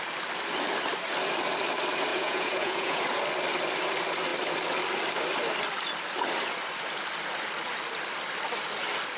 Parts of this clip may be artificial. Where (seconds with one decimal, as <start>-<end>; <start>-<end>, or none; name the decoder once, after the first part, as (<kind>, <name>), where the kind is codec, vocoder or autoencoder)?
2.1-3.0 (vocoder, Vocos)